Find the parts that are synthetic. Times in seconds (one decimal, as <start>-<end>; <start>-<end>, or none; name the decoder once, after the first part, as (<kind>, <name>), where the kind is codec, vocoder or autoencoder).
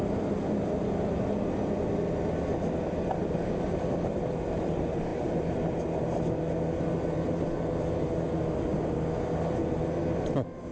none